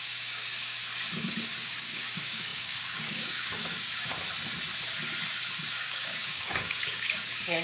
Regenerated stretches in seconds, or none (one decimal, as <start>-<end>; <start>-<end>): 0.0-0.8; 1.6-4.1; 5.7-7.6